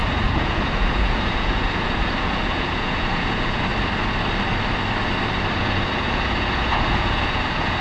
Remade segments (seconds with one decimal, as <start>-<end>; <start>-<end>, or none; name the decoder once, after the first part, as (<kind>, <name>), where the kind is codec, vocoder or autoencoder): 0.0-3.7 (vocoder, Vocos); 5.6-7.8